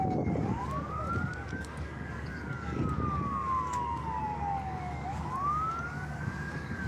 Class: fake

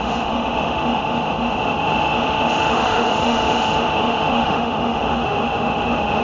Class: fake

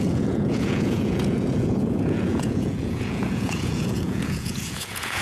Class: fake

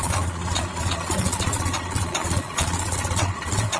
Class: fake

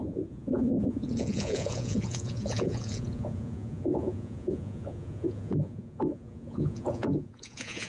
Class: fake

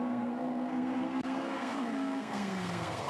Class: fake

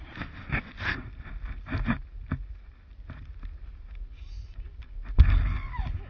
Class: real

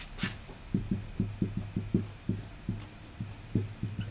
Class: real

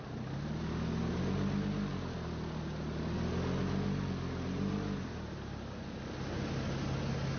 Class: real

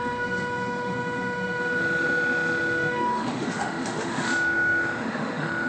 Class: fake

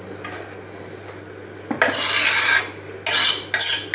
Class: real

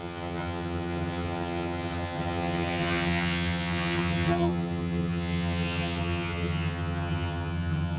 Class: fake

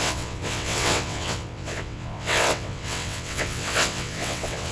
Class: fake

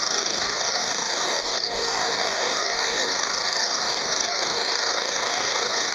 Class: fake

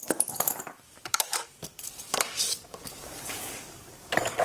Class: fake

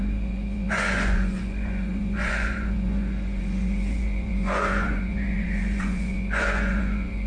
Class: fake